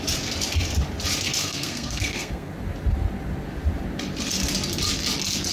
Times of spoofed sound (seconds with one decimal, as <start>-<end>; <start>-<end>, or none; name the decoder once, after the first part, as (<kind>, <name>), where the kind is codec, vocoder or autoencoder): 1.4-2.5 (codec, SNAC)